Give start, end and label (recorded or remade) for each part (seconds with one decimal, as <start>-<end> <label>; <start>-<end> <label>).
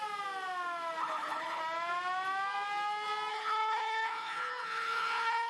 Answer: 0.0-1.0 recorded; 1.0-1.6 remade; 1.6-3.3 recorded; 3.3-5.5 remade